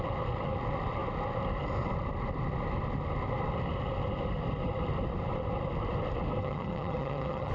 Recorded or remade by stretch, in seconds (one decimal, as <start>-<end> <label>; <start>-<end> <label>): 0.0-6.4 recorded; 6.4-7.5 remade